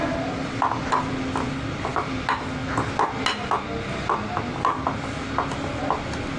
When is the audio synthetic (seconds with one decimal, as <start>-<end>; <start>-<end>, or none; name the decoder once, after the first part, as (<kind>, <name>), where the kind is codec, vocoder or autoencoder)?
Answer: none